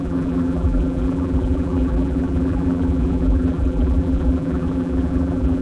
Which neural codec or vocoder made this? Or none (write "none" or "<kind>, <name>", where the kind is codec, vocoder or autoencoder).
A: vocoder, BigVGAN v2